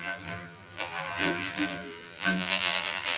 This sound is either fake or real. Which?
fake